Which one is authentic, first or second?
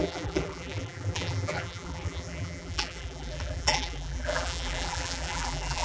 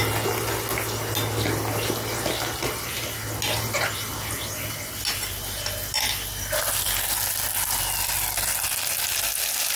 second